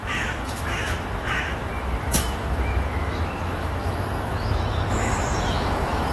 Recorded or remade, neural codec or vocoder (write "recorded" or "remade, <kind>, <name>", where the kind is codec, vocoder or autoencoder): remade, autoencoder, DAC-VAE